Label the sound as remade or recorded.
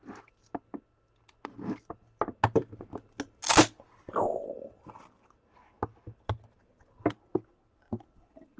recorded